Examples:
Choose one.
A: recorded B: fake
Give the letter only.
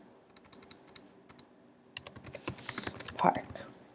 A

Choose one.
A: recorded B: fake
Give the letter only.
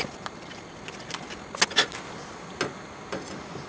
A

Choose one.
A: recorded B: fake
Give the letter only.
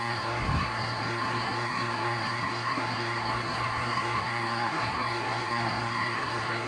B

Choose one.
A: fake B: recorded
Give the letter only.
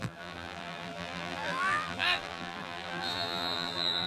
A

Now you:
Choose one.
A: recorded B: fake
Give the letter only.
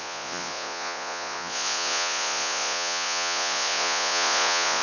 B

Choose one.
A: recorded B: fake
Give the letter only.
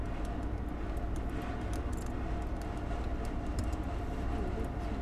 A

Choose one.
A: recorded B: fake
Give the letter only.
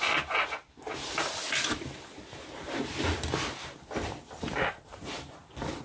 A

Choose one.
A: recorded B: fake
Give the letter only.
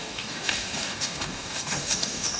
B